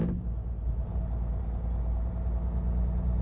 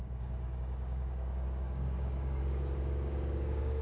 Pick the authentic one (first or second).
first